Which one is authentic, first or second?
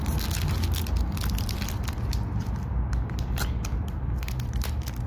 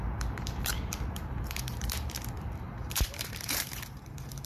first